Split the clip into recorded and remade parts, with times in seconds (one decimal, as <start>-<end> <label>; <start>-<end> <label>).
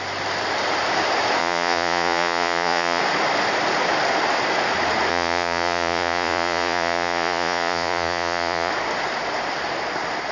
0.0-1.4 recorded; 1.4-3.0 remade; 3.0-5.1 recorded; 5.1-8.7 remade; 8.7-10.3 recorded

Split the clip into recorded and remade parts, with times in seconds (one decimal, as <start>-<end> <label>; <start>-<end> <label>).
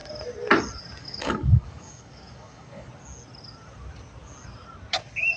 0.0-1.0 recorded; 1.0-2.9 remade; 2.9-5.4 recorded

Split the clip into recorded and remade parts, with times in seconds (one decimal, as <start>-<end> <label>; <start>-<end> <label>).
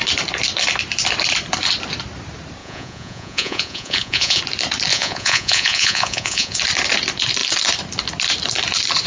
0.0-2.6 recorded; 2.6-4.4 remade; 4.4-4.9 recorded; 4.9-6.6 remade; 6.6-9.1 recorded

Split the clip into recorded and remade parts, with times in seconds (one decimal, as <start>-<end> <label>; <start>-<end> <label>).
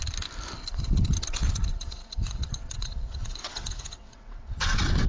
0.0-1.7 recorded; 1.7-5.1 remade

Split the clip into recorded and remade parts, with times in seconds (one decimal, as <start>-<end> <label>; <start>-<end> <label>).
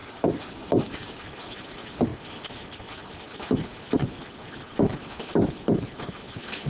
0.0-1.2 remade; 1.2-6.7 recorded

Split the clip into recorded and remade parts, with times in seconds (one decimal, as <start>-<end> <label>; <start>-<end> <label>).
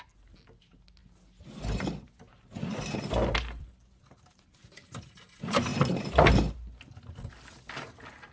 0.0-8.3 recorded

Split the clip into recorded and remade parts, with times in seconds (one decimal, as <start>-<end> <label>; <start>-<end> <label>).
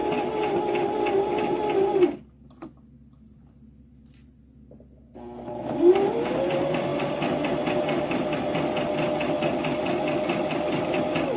0.0-11.4 recorded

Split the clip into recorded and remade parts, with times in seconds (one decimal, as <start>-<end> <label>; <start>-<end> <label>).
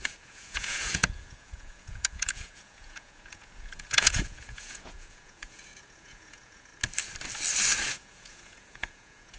0.0-6.7 remade; 6.7-7.9 recorded; 7.9-9.4 remade